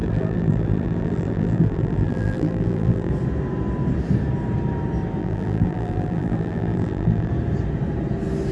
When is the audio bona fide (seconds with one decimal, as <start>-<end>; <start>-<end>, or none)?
3.1-5.2; 7.3-8.5